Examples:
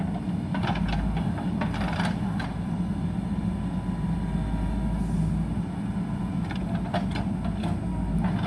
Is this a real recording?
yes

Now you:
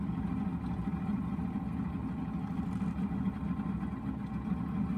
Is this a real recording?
yes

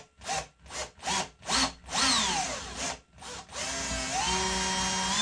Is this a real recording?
yes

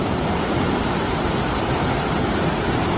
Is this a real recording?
no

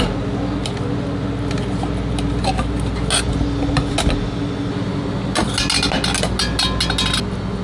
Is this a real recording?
yes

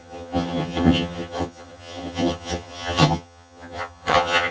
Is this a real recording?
no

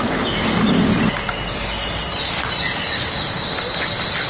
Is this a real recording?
yes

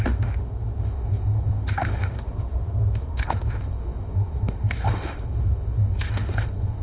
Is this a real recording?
no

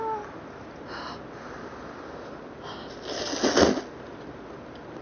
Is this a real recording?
yes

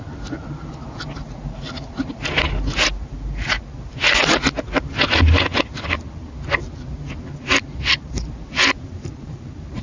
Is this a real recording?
yes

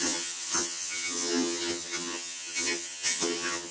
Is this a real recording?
no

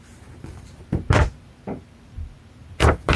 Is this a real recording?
no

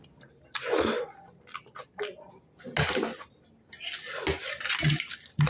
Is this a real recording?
yes